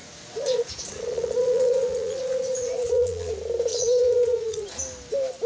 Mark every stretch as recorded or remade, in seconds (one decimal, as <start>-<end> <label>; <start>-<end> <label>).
0.0-3.3 remade; 3.3-3.7 recorded; 3.7-4.7 remade; 4.7-5.5 recorded